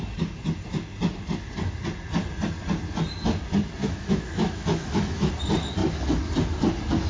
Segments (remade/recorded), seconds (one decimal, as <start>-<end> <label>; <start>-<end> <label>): 0.0-3.8 recorded; 3.8-5.3 remade; 5.3-7.1 recorded